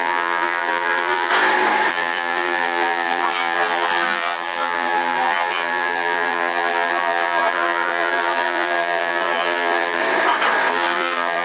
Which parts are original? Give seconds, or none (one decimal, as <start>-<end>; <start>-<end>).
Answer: 1.3-1.9; 10.0-10.7